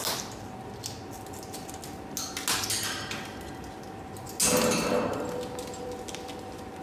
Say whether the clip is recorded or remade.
recorded